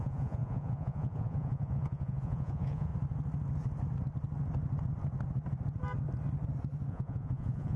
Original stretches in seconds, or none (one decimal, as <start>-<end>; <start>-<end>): 2.9-6.9